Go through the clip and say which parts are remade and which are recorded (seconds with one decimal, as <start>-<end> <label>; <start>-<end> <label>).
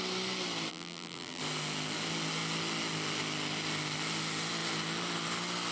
0.0-0.7 recorded; 0.7-1.4 remade; 1.4-5.7 recorded